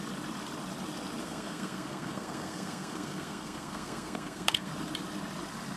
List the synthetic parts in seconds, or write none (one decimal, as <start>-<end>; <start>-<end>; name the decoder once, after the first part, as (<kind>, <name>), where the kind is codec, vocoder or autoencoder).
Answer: 1.2-4.7 (codec, SNAC)